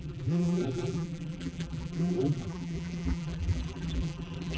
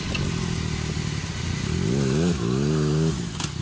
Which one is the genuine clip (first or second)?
second